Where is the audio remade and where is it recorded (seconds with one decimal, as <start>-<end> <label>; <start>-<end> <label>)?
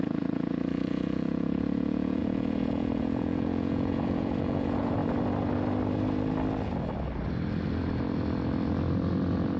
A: 0.0-5.0 remade; 5.0-9.6 recorded